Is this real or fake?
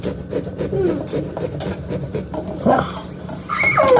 fake